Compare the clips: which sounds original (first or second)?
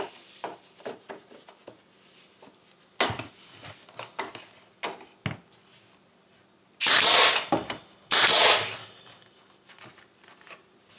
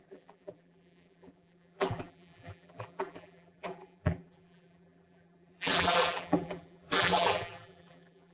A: first